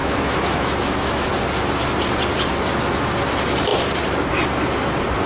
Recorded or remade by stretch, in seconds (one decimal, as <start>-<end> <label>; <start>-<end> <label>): 0.0-1.3 remade; 1.3-5.3 recorded

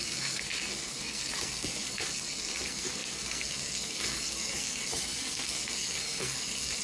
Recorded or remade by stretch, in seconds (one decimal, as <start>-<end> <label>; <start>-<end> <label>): 0.0-6.8 remade

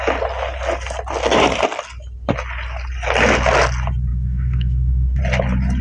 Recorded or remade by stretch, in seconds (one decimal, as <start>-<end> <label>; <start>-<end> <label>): 0.0-4.1 recorded; 4.1-5.2 remade; 5.2-5.8 recorded

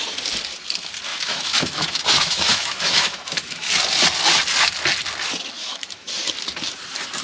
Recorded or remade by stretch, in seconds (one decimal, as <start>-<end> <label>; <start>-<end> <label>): 0.0-1.1 recorded; 1.1-3.7 remade; 3.7-5.6 recorded; 5.6-6.1 remade; 6.1-7.2 recorded

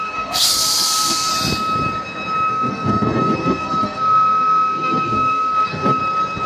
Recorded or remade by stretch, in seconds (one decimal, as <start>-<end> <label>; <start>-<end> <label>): 0.0-1.3 remade; 1.3-2.5 recorded; 2.5-6.0 remade; 6.0-6.5 recorded

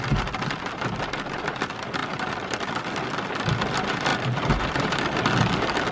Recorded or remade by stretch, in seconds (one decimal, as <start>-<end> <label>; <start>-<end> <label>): 0.0-4.1 recorded; 4.1-5.0 remade; 5.0-5.9 recorded